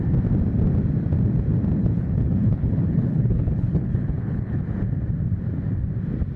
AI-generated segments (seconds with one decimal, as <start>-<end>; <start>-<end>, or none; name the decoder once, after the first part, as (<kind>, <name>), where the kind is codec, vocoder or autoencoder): 1.8-4.6 (codec, HILCodec)